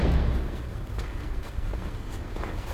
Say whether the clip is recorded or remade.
remade